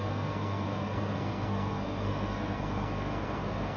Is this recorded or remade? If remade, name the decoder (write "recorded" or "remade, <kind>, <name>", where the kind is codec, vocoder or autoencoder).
remade, codec, SNAC